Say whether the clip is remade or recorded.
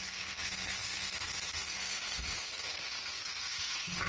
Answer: remade